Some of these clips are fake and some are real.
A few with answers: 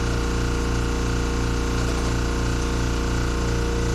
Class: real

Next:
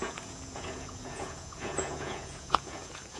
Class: fake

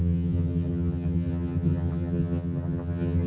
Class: fake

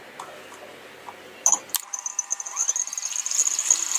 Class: real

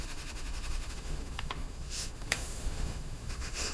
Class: fake